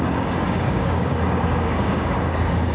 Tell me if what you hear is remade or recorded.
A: remade